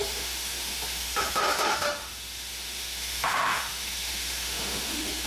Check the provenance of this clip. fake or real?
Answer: fake